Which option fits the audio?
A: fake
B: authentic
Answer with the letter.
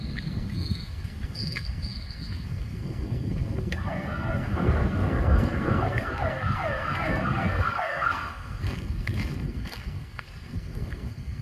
A